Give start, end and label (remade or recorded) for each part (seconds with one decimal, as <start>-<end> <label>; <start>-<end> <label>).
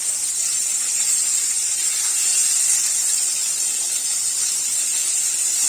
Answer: 0.0-0.5 recorded; 0.5-1.2 remade; 1.2-5.7 recorded